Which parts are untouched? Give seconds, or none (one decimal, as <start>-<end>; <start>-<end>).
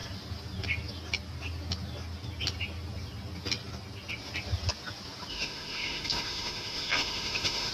0.0-5.3